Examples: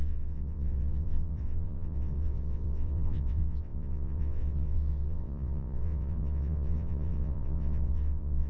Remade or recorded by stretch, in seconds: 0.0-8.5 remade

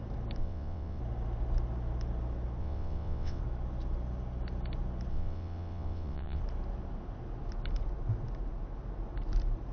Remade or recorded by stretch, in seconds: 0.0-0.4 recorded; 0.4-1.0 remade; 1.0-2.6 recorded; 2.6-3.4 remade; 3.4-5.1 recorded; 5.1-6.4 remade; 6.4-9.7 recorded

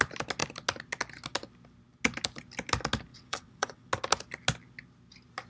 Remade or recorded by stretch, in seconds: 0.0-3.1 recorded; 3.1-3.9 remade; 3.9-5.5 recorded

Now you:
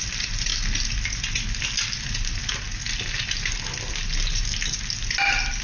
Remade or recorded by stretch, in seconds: 0.0-5.6 recorded

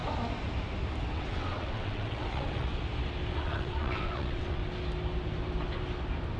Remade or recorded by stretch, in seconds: 0.0-1.1 recorded; 1.1-2.7 remade; 2.7-3.3 recorded; 3.3-4.6 remade; 4.6-6.4 recorded

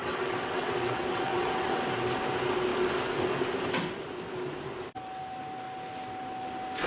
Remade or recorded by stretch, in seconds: 0.0-1.8 remade; 1.8-6.9 recorded

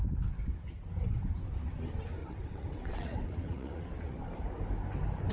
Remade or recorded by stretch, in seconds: 0.0-2.2 recorded; 2.2-4.2 remade; 4.2-5.3 recorded